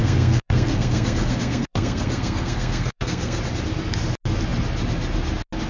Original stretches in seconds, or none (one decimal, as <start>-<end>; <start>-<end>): 3.4-5.7